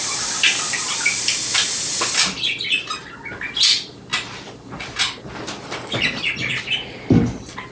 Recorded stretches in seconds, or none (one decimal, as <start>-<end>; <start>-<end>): 0.0-7.7